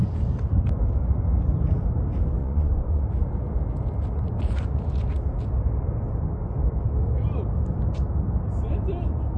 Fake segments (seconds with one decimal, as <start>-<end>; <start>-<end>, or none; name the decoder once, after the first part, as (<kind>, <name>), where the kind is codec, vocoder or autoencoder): 2.4-3.0 (vocoder, Vocos)